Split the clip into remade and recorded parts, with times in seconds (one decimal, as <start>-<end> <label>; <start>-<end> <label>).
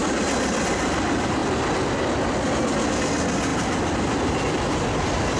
0.0-5.4 recorded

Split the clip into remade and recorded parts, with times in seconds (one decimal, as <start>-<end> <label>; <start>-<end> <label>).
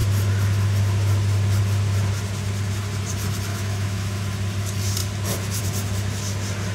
0.0-3.5 recorded; 3.5-4.2 remade; 4.2-6.7 recorded